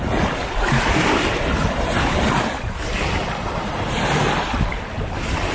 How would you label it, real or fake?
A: fake